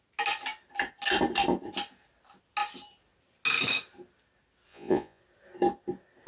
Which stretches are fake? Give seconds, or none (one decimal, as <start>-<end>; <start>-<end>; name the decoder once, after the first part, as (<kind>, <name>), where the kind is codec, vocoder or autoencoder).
4.7-5.2 (vocoder, Vocos)